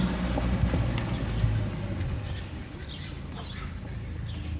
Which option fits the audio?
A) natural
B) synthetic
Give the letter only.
A